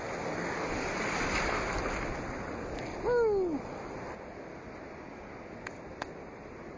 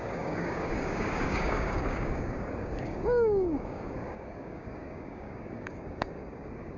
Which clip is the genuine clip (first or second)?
first